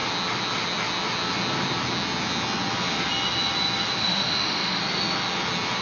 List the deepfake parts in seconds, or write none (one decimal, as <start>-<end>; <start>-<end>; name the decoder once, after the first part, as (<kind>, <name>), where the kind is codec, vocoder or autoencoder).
4.0-4.8 (autoencoder, DAC-VAE)